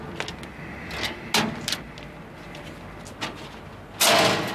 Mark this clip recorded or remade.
recorded